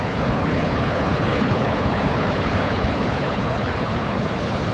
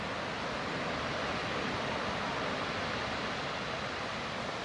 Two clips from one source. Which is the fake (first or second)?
first